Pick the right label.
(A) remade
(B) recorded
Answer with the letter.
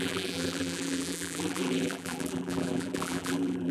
A